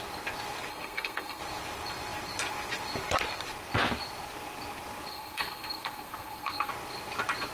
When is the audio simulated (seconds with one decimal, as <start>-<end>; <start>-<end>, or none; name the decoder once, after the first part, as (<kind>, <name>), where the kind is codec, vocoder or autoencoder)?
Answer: 0.7-1.4 (codec, SNAC); 5.1-6.7